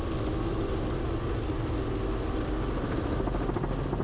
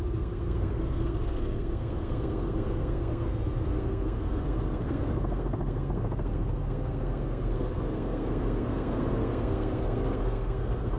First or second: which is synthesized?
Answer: second